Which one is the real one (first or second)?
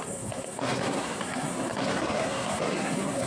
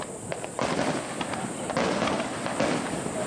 second